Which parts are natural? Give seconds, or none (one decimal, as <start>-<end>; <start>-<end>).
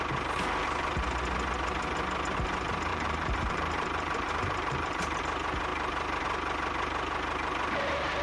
0.0-2.9; 5.2-8.2